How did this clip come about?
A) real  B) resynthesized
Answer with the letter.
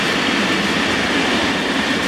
B